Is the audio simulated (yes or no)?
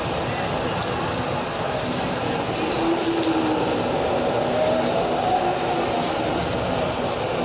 no